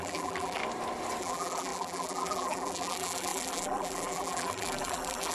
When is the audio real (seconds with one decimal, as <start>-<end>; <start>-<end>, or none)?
0.6-1.2